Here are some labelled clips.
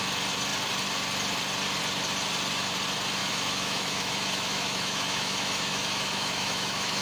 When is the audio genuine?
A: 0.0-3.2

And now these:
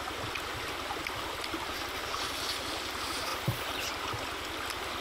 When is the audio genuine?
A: 0.0-5.0